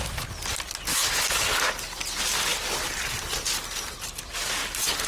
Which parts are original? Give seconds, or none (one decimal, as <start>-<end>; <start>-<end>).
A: 0.0-0.9; 1.6-5.1